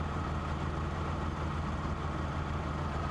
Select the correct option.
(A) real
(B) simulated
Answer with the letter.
B